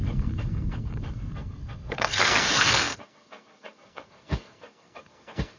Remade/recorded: remade